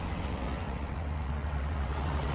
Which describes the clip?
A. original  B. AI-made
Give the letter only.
B